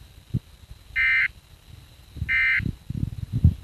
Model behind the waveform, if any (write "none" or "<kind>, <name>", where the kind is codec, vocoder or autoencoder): none